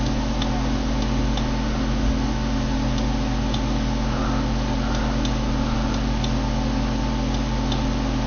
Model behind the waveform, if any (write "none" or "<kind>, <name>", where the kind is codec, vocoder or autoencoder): none